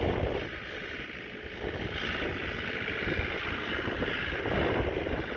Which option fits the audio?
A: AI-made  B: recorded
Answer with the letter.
B